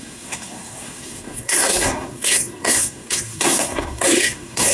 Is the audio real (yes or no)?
no